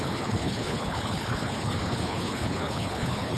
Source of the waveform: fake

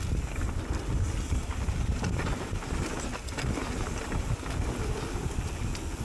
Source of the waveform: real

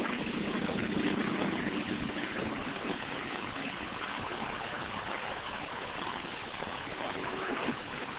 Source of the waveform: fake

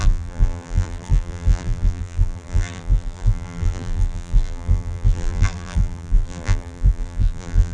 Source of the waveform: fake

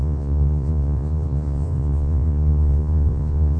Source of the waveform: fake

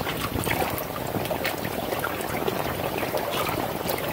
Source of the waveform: real